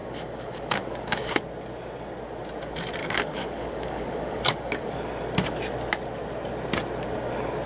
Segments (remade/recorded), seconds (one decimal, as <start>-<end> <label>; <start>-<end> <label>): 0.0-1.4 remade; 1.4-3.0 recorded; 3.0-5.0 remade; 5.0-7.7 recorded